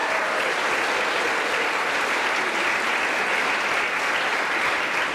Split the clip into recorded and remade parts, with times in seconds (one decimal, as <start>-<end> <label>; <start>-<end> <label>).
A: 0.0-5.1 recorded